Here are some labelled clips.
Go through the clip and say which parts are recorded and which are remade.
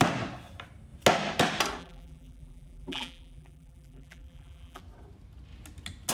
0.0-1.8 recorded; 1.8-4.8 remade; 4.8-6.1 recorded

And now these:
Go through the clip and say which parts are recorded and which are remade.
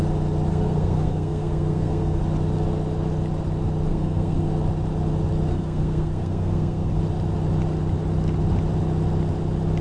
0.0-0.5 recorded; 0.5-2.2 remade; 2.2-3.9 recorded; 3.9-4.5 remade; 4.5-5.5 recorded; 5.5-7.0 remade; 7.0-9.8 recorded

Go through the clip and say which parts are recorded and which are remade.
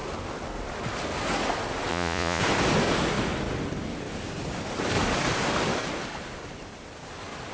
0.0-1.9 recorded; 1.9-2.4 remade; 2.4-7.5 recorded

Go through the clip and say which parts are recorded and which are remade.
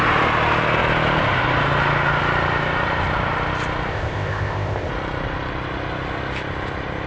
0.0-3.9 recorded; 3.9-4.9 remade; 4.9-7.1 recorded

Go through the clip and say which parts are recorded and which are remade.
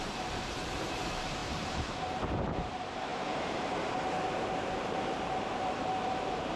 0.0-6.6 remade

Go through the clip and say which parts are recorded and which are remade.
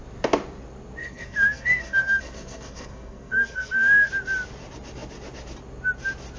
0.0-1.0 recorded; 1.0-4.1 remade; 4.1-6.4 recorded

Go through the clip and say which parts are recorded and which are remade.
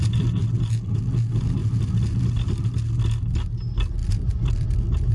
0.0-0.4 recorded; 0.4-1.0 remade; 1.0-4.0 recorded; 4.0-5.1 remade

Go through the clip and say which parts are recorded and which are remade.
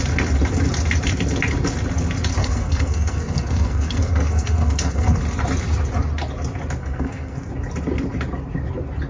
0.0-2.4 recorded; 2.4-5.2 remade; 5.2-6.8 recorded; 6.8-7.5 remade; 7.5-9.1 recorded